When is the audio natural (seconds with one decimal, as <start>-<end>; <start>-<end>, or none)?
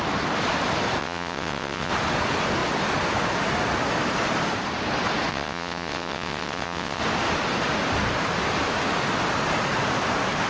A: 0.0-1.0; 1.9-5.3; 7.0-10.5